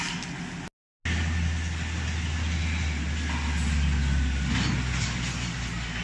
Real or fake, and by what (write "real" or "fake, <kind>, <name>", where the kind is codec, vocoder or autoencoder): real